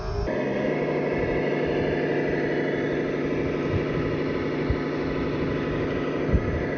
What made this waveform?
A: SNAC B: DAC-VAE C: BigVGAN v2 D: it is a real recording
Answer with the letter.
D